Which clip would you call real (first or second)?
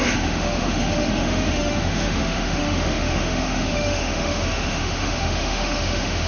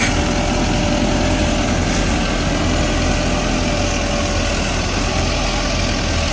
second